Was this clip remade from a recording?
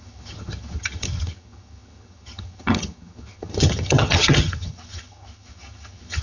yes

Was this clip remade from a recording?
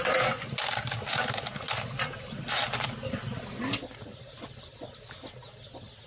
no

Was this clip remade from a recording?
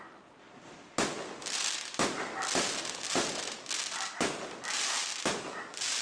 no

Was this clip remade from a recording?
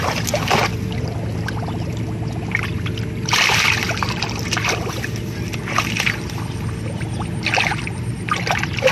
yes